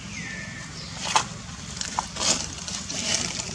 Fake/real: fake